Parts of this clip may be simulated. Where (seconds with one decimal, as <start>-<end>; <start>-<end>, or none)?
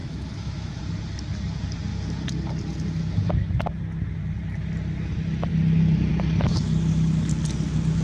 0.0-0.8